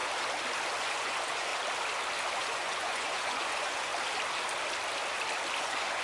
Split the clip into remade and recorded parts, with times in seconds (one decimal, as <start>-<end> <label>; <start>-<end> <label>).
0.0-0.8 recorded; 0.8-1.5 remade; 1.5-2.4 recorded; 2.4-3.9 remade; 3.9-5.6 recorded; 5.6-6.0 remade